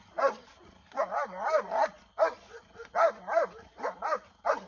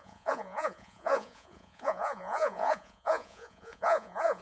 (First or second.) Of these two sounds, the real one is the first